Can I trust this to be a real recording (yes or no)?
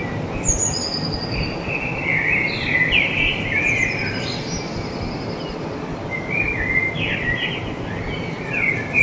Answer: yes